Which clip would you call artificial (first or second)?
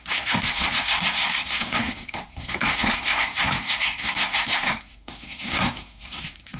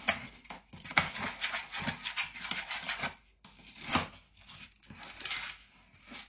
first